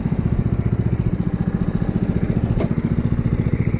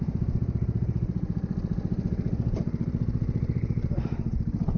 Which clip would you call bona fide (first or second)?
first